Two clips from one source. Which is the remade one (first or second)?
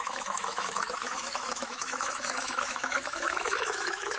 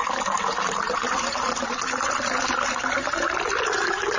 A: first